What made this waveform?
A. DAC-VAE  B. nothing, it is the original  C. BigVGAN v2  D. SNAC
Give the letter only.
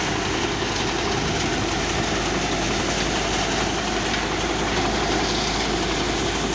B